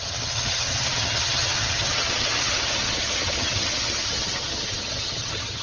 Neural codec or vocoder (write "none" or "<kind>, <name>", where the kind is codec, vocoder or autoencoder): vocoder, HiFi-GAN